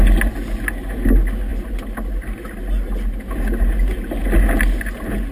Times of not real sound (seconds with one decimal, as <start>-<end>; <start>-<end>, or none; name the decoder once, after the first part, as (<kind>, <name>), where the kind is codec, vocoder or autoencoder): none